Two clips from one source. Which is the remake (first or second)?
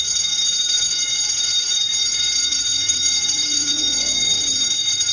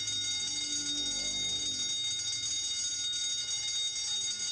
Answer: first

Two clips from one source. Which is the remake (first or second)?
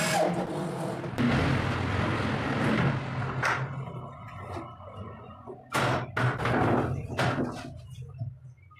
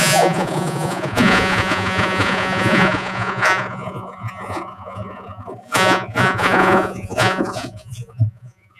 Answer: second